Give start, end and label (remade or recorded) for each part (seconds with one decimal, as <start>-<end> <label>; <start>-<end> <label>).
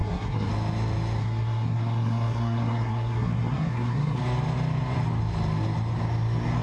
0.0-0.5 remade; 0.5-1.2 recorded; 1.2-4.2 remade; 4.2-6.6 recorded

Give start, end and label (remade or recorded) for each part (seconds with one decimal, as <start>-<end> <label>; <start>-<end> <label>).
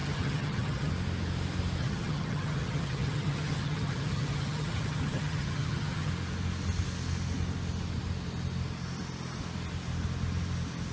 0.0-0.9 remade; 0.9-1.8 recorded; 1.8-6.1 remade; 6.1-10.9 recorded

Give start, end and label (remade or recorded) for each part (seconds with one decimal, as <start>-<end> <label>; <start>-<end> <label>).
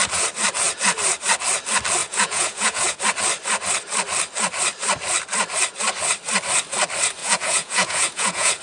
0.0-2.0 recorded; 2.0-3.0 remade; 3.0-7.2 recorded; 7.2-8.6 remade